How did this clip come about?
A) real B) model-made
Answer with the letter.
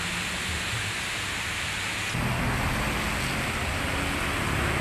A